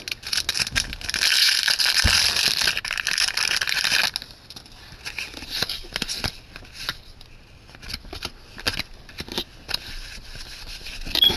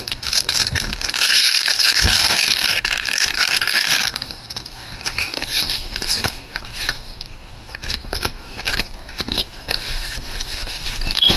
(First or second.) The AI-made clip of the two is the second